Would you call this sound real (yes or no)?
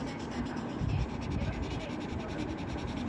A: yes